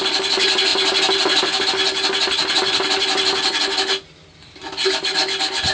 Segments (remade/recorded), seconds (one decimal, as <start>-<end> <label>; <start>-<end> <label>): 0.0-5.7 recorded